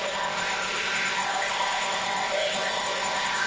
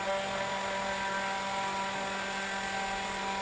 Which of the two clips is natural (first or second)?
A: second